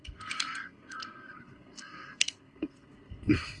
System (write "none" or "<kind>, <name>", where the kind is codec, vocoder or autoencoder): codec, SNAC